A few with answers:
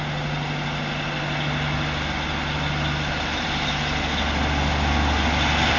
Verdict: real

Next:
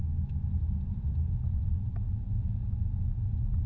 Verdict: fake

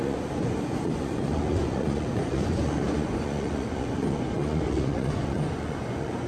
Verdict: fake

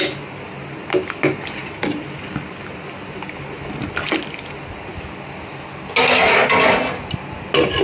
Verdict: real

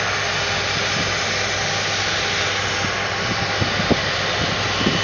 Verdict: real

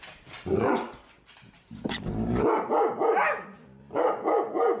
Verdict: real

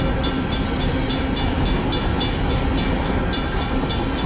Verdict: real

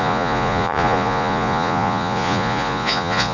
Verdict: fake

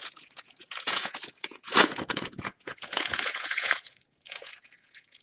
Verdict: fake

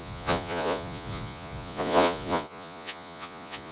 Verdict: fake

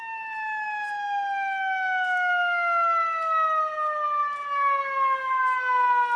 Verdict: real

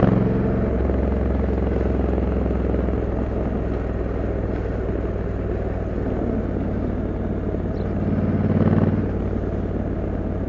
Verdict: real